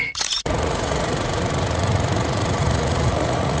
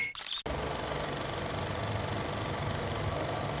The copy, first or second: first